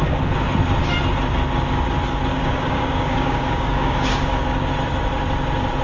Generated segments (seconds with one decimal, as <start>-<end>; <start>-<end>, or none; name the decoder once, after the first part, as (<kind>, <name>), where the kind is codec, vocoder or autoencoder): 2.3-4.7 (codec, DAC)